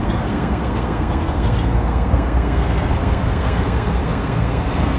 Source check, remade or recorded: remade